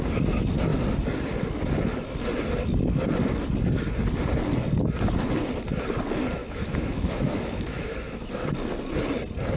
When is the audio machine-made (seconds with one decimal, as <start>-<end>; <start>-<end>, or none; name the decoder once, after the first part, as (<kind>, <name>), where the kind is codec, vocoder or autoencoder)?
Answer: 6.4-8.3 (autoencoder, DAC-VAE)